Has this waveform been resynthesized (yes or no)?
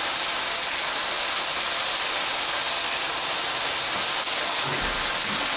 no